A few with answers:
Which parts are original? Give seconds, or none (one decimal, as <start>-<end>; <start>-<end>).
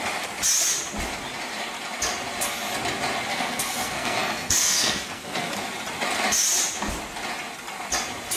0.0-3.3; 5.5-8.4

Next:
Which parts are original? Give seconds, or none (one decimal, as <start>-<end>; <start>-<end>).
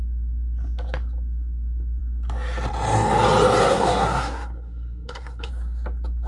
0.0-3.6; 5.5-6.3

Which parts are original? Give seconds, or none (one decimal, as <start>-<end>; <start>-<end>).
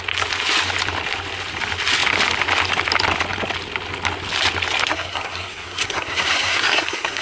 0.0-4.9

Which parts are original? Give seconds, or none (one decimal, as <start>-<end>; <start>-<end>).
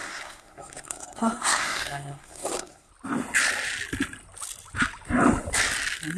2.9-6.2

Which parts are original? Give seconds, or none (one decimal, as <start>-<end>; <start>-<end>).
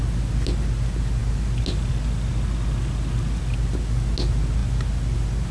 0.0-5.5